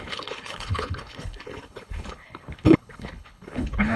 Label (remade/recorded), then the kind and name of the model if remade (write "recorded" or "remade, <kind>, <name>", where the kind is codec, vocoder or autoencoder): remade, codec, HILCodec